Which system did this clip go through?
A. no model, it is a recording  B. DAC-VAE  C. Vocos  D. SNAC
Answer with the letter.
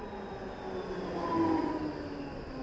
A